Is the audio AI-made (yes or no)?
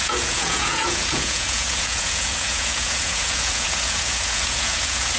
yes